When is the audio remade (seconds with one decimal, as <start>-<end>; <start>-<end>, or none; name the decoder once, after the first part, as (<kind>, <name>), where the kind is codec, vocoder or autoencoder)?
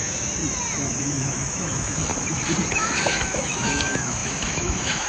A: 0.0-0.4 (autoencoder, DAC-VAE); 1.0-2.1; 2.7-5.1